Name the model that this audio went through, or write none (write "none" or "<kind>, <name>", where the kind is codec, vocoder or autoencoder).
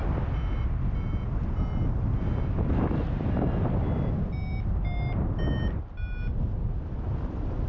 none